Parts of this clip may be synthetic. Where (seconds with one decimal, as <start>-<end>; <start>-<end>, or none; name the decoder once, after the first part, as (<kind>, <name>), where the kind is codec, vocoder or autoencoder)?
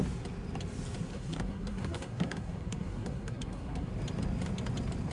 1.1-3.9 (codec, SNAC)